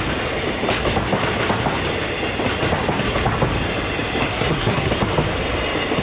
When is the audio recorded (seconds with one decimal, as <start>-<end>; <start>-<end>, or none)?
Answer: 0.0-4.3; 4.9-6.0